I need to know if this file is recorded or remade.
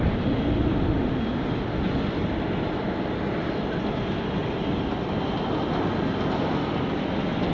recorded